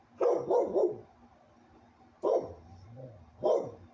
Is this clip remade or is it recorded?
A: recorded